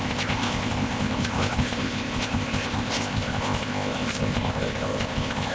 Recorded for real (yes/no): no